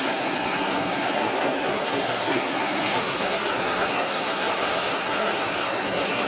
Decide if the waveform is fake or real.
fake